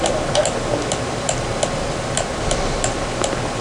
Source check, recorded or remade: recorded